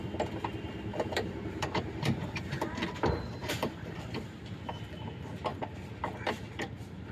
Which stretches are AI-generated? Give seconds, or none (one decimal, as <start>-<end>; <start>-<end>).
0.9-2.4; 3.4-4.5